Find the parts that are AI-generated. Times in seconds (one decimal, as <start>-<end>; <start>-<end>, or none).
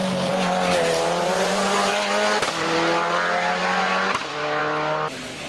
none